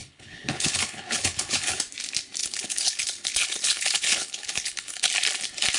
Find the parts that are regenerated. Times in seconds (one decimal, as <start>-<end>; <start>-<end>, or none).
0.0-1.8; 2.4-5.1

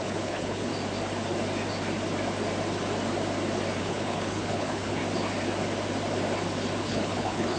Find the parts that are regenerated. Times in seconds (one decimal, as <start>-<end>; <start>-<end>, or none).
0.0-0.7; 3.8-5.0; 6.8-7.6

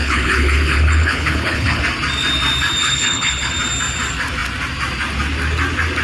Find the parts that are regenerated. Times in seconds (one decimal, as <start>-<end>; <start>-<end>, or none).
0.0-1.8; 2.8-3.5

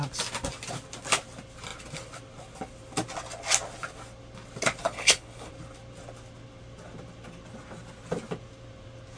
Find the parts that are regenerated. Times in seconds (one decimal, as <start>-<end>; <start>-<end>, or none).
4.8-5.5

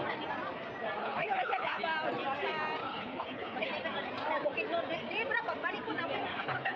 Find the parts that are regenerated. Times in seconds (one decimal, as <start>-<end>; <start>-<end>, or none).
1.0-1.8; 2.8-3.7; 6.3-6.8

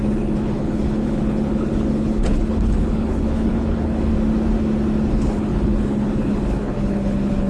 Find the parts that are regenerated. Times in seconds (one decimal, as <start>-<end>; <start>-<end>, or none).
0.0-4.1; 5.1-7.5

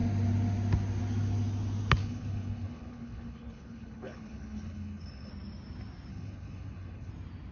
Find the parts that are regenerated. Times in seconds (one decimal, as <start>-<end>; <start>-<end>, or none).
2.0-5.3; 6.1-7.1

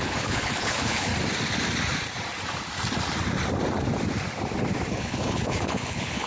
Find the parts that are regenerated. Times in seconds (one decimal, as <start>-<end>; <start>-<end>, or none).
0.0-1.1; 4.9-6.3